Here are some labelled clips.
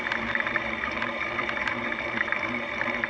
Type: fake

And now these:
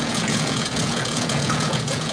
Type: fake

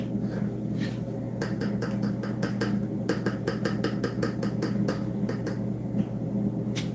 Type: real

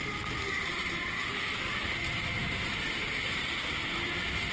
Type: real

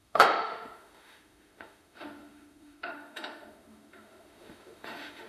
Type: fake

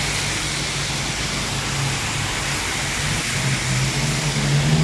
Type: real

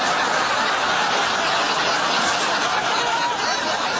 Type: real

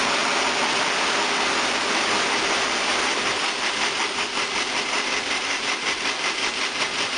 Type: real